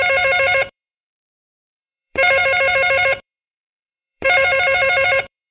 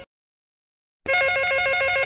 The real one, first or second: second